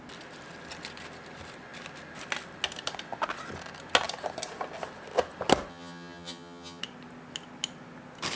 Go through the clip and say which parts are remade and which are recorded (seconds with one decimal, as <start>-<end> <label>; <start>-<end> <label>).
0.0-5.7 recorded; 5.7-6.8 remade; 6.8-8.4 recorded